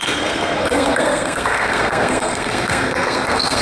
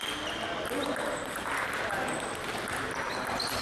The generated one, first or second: first